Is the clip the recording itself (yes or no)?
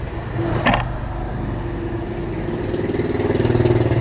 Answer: yes